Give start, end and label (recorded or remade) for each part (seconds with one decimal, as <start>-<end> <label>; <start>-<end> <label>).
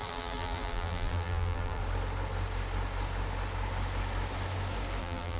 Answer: 0.0-1.8 remade; 1.8-5.0 recorded; 5.0-5.4 remade